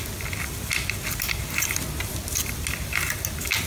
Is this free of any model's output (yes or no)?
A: yes